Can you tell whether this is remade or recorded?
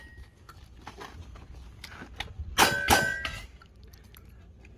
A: recorded